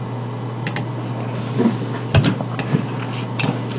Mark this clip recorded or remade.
recorded